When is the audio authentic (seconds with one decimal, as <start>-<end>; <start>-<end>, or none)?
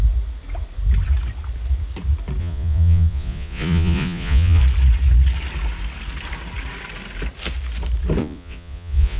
0.0-2.4; 4.6-8.2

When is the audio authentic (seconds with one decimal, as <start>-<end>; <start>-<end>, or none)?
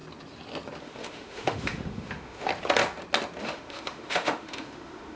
0.0-0.8; 2.5-3.4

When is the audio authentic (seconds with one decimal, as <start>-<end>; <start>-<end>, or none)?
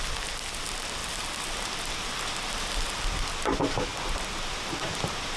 0.0-5.4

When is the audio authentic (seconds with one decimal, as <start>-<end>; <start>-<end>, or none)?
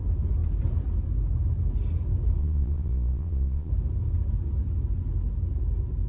0.0-2.4; 3.7-6.1